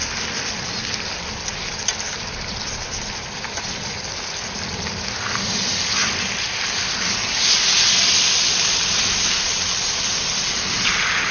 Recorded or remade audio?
recorded